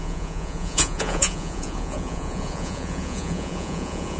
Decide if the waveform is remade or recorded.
remade